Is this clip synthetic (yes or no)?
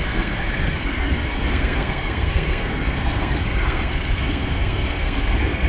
yes